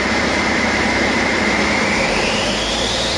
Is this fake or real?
fake